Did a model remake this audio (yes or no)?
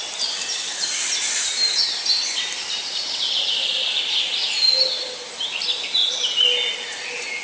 no